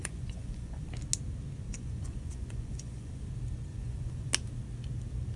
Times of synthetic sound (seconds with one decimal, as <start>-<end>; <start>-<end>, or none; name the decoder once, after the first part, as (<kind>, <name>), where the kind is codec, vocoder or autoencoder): 0.0-0.9 (vocoder, Vocos); 1.7-3.2; 3.7-4.3